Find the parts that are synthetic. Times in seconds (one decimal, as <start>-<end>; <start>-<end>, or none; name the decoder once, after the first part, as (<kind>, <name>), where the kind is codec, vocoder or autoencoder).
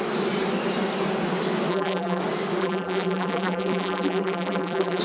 1.7-2.2 (vocoder, BigVGAN v2); 2.6-5.0